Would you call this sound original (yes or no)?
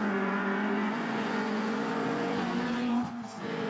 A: no